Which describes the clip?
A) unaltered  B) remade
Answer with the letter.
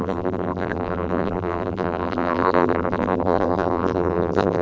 B